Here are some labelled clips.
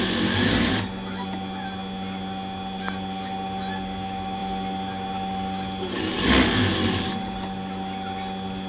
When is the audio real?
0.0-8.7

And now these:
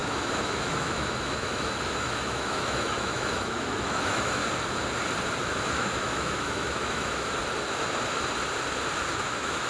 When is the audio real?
4.4-5.4; 7.4-9.1

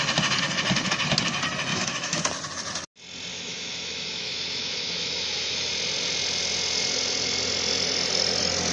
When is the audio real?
0.0-1.7; 2.2-3.3; 5.7-8.7

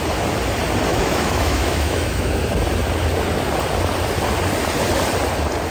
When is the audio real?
0.0-0.9; 2.3-5.7

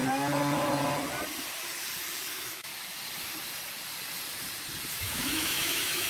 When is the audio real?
0.0-2.3; 2.7-4.9

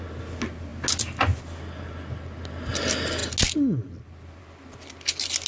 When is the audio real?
0.0-5.5

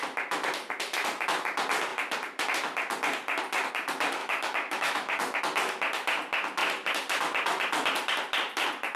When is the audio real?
0.0-4.2; 5.4-9.0

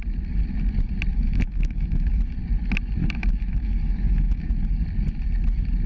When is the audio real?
0.0-1.1; 2.2-3.0; 4.5-5.9